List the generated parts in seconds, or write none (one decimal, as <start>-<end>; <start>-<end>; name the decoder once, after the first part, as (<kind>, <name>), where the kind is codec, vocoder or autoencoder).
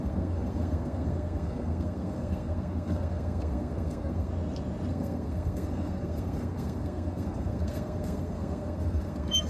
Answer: 0.0-4.3 (codec, SNAC); 4.9-9.5